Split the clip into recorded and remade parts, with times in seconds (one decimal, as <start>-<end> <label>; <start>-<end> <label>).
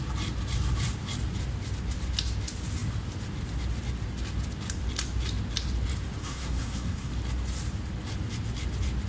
0.0-6.2 recorded; 6.2-7.1 remade; 7.1-9.1 recorded